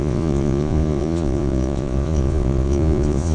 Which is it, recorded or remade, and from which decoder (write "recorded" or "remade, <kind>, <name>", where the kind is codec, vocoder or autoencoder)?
remade, vocoder, Vocos